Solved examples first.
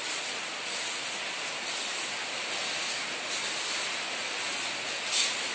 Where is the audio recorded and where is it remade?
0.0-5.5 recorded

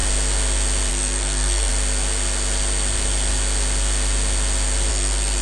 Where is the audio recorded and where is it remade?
0.0-0.9 recorded; 0.9-1.7 remade; 1.7-4.9 recorded; 4.9-5.4 remade

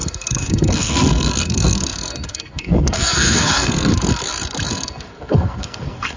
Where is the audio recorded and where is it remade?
0.0-3.9 remade; 3.9-4.7 recorded; 4.7-6.2 remade

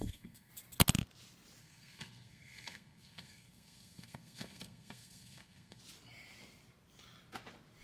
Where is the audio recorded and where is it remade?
0.0-0.5 remade; 0.5-1.6 recorded; 1.6-5.8 remade; 5.8-7.8 recorded

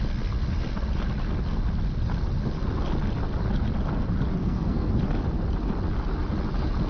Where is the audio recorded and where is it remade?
0.0-4.4 recorded; 4.4-4.9 remade; 4.9-6.9 recorded

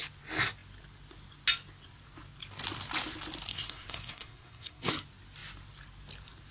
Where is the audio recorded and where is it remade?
0.0-3.5 recorded; 3.5-4.9 remade; 4.9-6.5 recorded

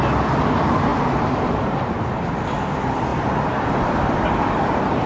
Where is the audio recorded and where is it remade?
0.0-5.1 recorded